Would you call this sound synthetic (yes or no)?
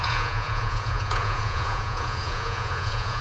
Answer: yes